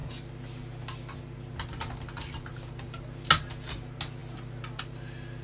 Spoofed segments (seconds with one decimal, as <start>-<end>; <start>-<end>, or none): none